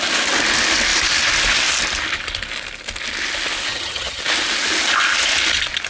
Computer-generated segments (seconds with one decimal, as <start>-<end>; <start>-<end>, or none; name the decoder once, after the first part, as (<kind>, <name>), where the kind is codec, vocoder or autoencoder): 3.7-4.2 (vocoder, HiFi-GAN)